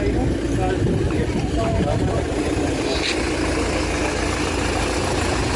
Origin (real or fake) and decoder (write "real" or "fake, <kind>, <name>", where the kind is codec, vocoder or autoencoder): real